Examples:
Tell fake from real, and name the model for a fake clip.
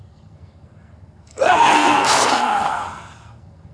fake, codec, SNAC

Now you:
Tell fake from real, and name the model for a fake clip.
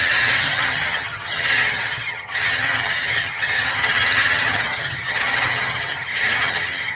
fake, vocoder, HiFi-GAN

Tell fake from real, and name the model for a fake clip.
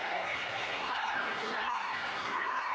fake, codec, SNAC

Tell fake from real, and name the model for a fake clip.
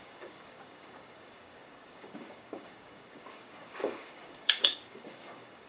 fake, codec, DAC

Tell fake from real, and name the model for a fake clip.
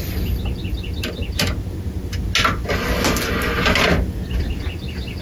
real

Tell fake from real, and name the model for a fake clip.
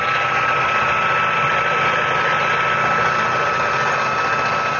real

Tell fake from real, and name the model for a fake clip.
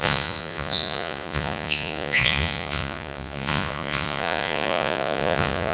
fake, vocoder, Vocos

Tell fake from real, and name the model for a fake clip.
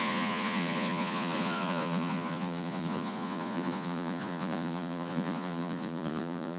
fake, vocoder, Vocos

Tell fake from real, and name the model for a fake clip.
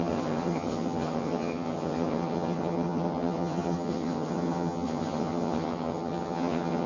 fake, vocoder, HiFi-GAN